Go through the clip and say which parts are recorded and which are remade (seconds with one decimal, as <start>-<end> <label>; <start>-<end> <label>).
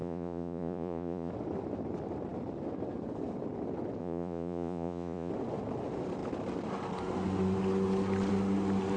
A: 0.0-1.3 remade; 1.3-4.0 recorded; 4.0-5.3 remade; 5.3-9.0 recorded